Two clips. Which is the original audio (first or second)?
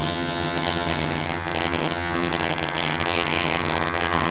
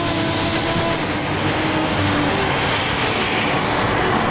second